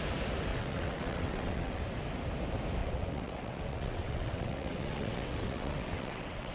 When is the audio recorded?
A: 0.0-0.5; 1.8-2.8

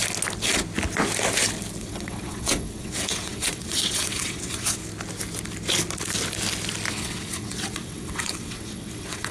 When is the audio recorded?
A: 0.0-1.8; 4.8-6.9

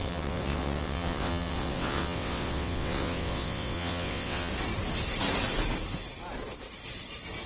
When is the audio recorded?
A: 4.5-7.5

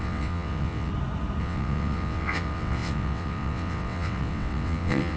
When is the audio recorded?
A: 0.9-1.4

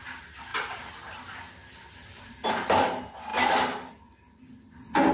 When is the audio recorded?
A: 0.0-5.1

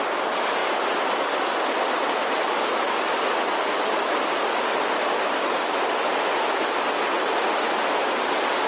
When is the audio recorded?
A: 0.0-8.7